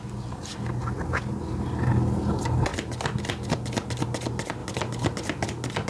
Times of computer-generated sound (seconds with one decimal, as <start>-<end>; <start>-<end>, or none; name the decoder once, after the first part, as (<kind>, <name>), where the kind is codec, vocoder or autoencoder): none